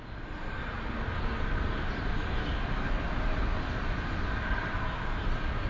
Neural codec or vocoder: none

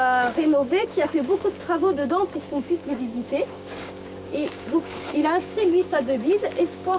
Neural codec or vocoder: codec, DAC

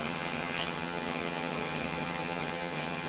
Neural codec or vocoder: vocoder, HiFi-GAN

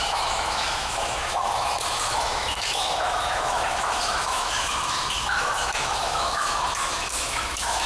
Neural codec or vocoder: autoencoder, DAC-VAE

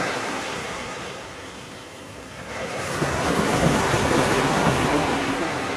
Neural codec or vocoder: codec, SNAC